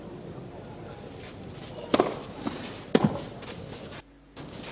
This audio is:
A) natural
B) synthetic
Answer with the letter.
A